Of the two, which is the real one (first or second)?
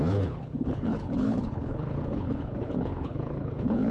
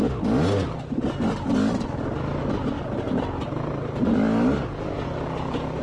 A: second